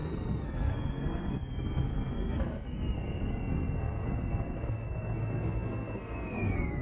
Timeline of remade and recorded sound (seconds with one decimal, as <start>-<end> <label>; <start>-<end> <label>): 0.0-6.8 remade